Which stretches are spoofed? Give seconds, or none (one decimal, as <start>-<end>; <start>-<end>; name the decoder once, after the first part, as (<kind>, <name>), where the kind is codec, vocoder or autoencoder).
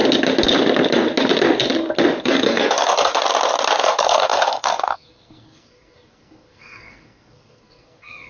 2.2-3.1 (codec, SNAC); 3.8-8.3